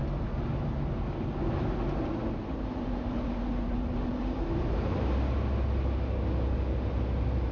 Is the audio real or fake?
real